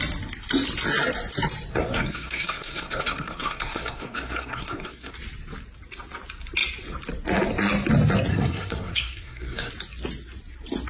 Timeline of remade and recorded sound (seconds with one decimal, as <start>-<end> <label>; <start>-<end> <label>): 0.0-1.7 recorded; 1.7-5.1 remade; 5.1-8.3 recorded; 8.3-9.7 remade; 9.7-10.9 recorded